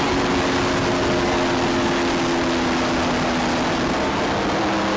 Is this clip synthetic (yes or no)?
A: no